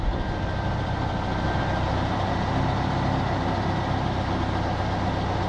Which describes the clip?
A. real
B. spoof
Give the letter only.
A